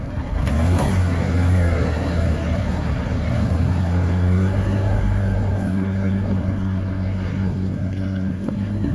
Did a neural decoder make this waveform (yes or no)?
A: yes